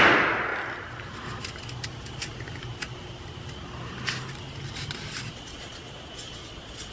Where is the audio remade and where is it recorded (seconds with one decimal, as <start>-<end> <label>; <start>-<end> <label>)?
0.0-5.5 recorded; 5.5-6.9 remade